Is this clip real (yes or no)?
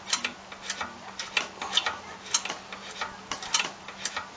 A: yes